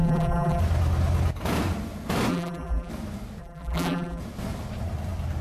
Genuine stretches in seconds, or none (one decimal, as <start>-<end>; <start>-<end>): 0.6-2.3; 2.9-3.4; 4.2-5.4